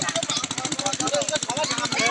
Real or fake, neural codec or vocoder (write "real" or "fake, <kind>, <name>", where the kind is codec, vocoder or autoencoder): real